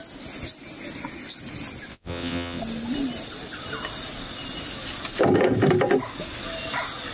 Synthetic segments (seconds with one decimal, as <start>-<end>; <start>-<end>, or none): 1.9-2.6